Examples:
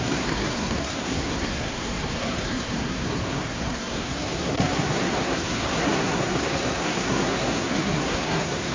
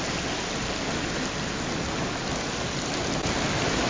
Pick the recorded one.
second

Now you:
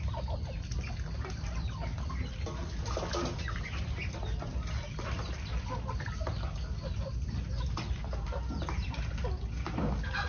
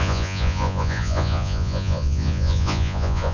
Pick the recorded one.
first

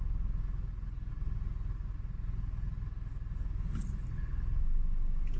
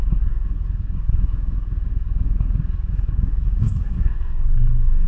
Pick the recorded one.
first